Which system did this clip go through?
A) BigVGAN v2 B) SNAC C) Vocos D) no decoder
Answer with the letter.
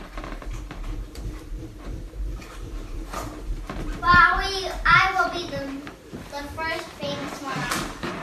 A